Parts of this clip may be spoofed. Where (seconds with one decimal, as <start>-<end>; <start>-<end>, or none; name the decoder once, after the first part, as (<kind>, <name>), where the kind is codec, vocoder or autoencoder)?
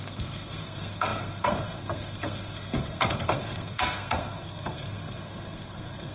0.0-6.1 (codec, SNAC)